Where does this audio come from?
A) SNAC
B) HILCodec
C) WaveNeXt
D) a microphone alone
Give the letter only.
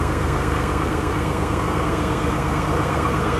A